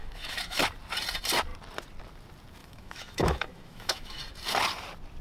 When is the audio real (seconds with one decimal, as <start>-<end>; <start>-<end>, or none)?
0.6-2.6; 4.2-5.2